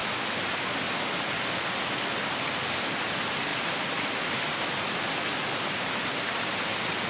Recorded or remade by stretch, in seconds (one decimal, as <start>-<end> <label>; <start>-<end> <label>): 0.0-0.5 remade; 0.5-7.1 recorded